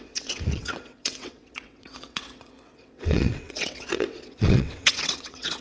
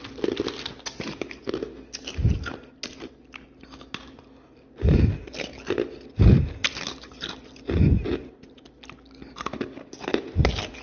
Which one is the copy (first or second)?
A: first